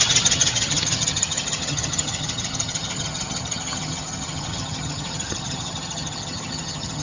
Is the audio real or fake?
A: fake